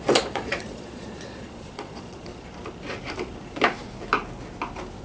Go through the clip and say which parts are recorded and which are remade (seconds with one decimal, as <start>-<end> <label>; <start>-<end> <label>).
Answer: 0.0-2.3 remade; 2.3-5.0 recorded